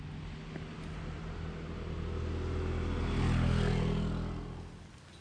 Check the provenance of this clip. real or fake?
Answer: real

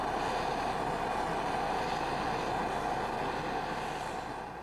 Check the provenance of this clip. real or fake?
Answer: real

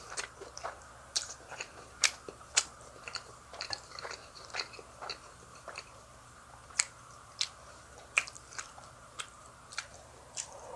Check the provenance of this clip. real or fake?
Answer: fake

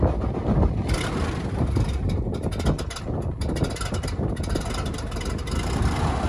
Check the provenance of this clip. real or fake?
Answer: real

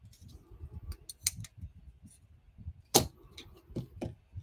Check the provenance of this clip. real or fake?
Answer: real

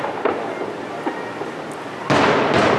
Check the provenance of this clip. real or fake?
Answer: real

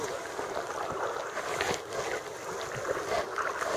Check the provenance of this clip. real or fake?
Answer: real